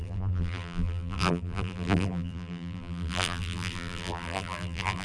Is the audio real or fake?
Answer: fake